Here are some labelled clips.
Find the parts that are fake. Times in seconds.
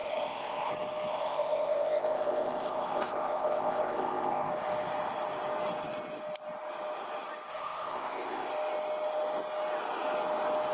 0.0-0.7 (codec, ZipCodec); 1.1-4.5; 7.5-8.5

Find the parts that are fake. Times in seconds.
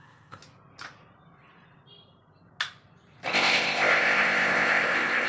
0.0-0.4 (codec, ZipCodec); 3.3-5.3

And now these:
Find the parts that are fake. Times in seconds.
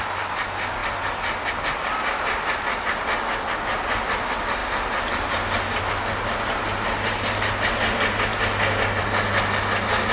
none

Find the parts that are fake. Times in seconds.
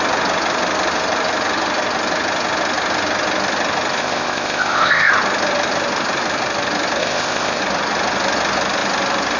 4.0-5.1 (codec, ZipCodec); 7.0-7.6